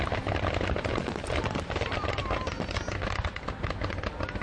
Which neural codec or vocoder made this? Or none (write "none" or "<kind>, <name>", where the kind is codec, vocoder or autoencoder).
none